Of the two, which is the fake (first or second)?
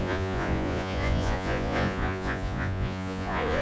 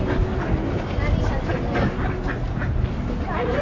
first